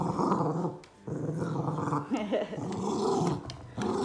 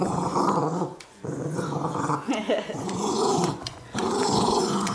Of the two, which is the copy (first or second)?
second